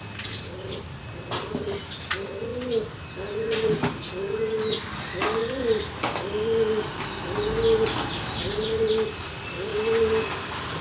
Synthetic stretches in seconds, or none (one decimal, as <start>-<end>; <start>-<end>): none